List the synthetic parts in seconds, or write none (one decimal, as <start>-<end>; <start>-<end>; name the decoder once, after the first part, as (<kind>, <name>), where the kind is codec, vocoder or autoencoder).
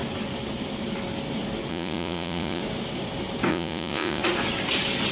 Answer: 1.7-2.6 (vocoder, Vocos); 3.5-4.2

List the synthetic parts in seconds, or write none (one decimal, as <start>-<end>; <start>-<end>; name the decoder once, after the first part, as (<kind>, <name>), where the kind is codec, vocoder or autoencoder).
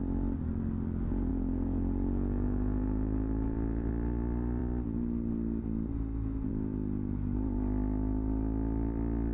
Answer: 1.3-3.9 (vocoder, Vocos)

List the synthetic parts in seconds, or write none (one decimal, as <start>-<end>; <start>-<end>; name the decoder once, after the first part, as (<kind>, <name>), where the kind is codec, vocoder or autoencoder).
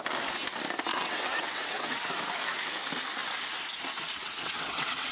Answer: 0.9-2.0 (vocoder, WaveNeXt); 4.2-5.1